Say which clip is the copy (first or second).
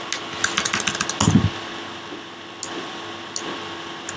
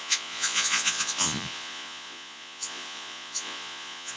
second